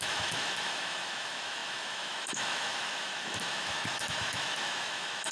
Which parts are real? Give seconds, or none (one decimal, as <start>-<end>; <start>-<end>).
none